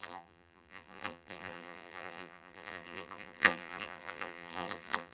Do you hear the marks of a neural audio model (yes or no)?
yes